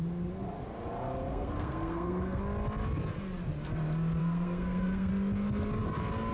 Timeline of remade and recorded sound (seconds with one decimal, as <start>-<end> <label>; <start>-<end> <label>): 0.0-1.3 recorded; 1.3-2.4 remade; 2.4-4.2 recorded; 4.2-5.1 remade; 5.1-6.3 recorded